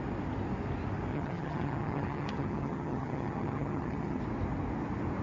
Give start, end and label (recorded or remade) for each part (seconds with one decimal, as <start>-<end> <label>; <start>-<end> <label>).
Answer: 0.0-1.1 recorded; 1.1-4.2 remade; 4.2-5.2 recorded